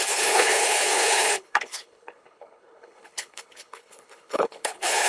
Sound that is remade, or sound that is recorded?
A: remade